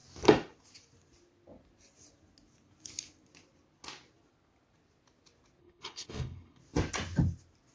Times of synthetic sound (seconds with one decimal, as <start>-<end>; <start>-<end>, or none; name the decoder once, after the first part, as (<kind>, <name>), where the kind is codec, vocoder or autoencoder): 5.6-6.6 (codec, HILCodec)